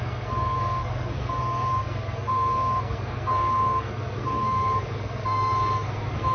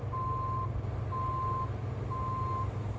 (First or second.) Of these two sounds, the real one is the second